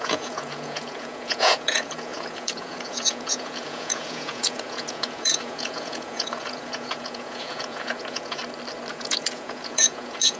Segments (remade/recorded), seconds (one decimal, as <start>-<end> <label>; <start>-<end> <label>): 0.0-8.4 remade; 8.4-8.9 recorded; 8.9-10.4 remade